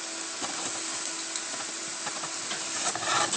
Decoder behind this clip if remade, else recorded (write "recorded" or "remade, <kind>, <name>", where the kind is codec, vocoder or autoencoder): recorded